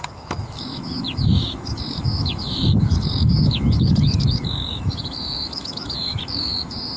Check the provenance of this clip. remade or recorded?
remade